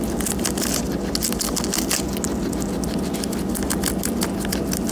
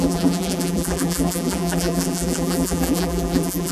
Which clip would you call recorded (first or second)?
first